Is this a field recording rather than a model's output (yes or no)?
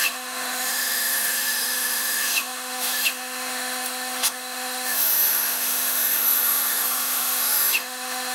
no